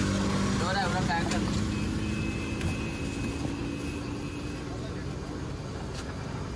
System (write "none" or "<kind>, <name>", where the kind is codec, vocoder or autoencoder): none